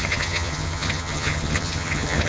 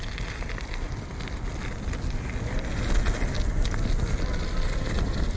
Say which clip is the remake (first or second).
first